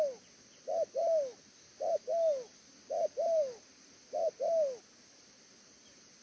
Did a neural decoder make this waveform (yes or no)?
no